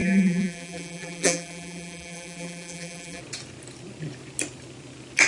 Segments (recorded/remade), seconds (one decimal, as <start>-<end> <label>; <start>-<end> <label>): 0.0-3.2 remade; 3.2-5.3 recorded